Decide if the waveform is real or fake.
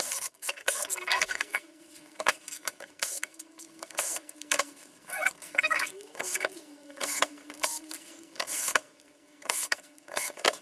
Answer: fake